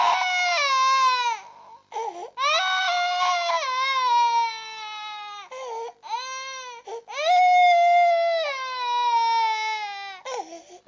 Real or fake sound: real